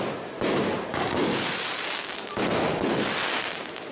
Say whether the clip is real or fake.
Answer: fake